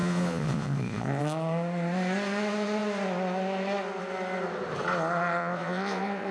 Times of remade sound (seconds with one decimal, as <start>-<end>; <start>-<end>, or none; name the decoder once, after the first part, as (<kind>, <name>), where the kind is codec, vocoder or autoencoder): 0.0-1.2 (vocoder, Vocos); 5.4-6.3